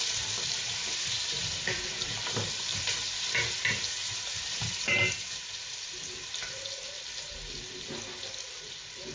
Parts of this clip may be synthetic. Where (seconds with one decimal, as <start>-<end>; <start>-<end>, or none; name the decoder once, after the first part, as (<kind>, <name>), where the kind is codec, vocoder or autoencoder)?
0.8-2.0 (vocoder, BigVGAN v2); 2.7-6.6